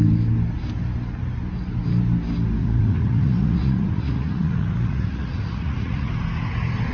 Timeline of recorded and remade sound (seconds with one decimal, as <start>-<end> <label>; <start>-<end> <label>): 0.0-2.6 recorded; 2.6-6.1 remade; 6.1-6.9 recorded